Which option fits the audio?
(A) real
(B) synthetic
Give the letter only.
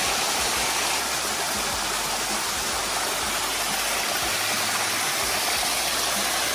A